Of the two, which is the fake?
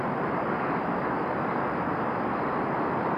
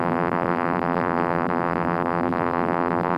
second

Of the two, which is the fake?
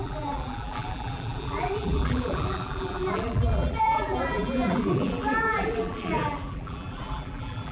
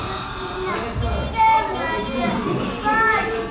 first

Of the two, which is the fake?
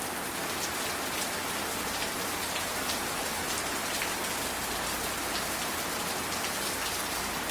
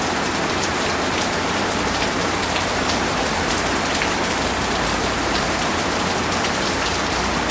second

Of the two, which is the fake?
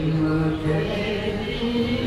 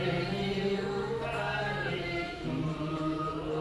second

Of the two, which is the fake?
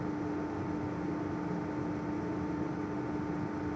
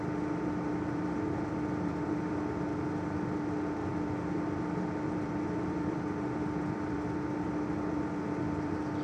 second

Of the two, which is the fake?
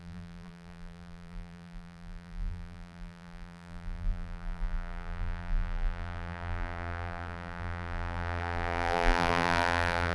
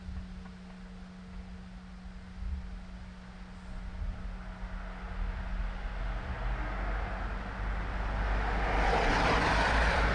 first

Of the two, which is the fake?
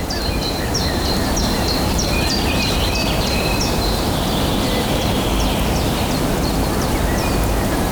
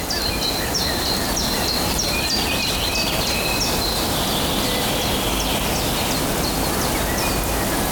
first